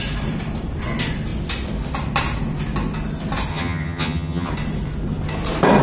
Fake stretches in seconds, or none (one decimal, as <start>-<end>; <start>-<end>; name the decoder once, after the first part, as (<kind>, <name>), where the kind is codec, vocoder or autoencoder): 3.5-4.5 (vocoder, HiFi-GAN)